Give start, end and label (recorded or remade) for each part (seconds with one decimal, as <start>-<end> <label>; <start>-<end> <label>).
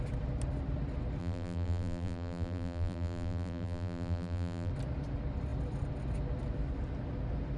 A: 0.0-1.2 recorded; 1.2-4.7 remade; 4.7-7.6 recorded